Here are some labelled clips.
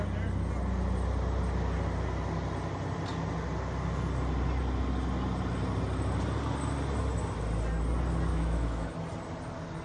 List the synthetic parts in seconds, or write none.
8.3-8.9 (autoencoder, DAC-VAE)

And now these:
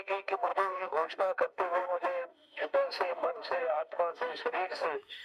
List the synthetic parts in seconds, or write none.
0.0-5.2 (autoencoder, DAC-VAE)

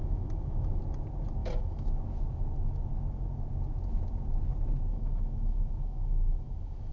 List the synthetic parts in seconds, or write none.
0.0-0.8 (autoencoder, DAC-VAE); 1.4-2.0; 4.9-6.9

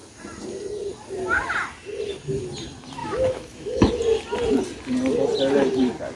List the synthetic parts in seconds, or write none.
3.0-3.9 (autoencoder, DAC-VAE)

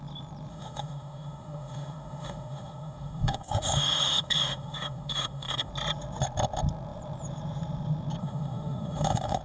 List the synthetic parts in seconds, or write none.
0.5-5.7 (autoencoder, DAC-VAE); 8.2-9.4

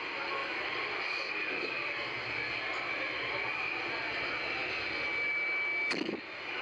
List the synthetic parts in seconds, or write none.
none

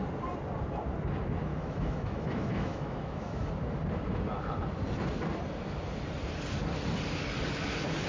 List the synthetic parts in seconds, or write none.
1.5-3.5 (autoencoder, DAC-VAE)